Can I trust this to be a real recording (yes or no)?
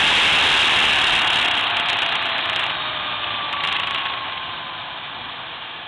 yes